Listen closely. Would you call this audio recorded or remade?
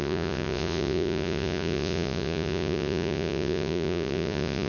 remade